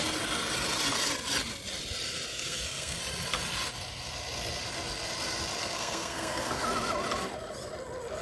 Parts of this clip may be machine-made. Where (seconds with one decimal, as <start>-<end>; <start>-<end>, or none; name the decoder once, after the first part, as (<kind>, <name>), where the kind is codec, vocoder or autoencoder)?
2.3-3.0 (codec, SNAC); 5.6-6.6